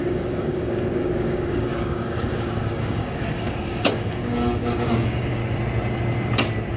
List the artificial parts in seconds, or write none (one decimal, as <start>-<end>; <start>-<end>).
0.0-5.4